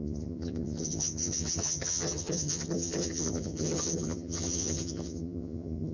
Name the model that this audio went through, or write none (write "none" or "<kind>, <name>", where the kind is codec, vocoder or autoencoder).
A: vocoder, HiFi-GAN